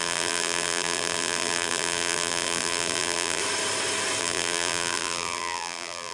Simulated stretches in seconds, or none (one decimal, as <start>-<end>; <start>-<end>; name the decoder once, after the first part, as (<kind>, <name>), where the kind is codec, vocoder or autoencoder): 0.0-3.4 (vocoder, BigVGAN v2); 4.2-6.1